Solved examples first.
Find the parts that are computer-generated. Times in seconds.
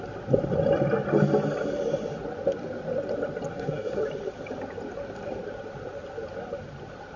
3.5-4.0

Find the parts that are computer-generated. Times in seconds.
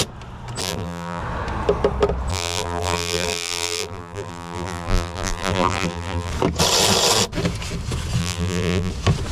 0.6-1.2; 2.3-6.3; 8.2-8.9